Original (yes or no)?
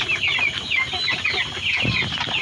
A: yes